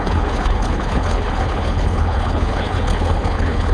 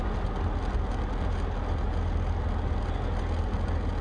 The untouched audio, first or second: second